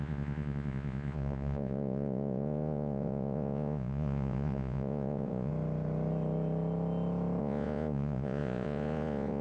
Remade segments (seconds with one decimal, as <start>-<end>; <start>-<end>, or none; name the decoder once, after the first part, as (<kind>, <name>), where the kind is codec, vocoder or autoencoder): 0.0-5.5 (vocoder, Vocos); 7.4-9.4